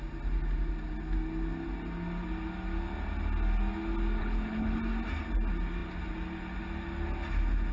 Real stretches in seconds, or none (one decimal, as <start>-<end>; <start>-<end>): 0.0-4.2; 4.8-7.7